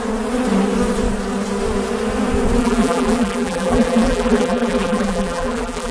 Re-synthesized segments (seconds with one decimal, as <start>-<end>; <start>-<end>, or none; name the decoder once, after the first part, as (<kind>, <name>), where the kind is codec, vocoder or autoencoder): 2.6-5.9 (vocoder, BigVGAN v2)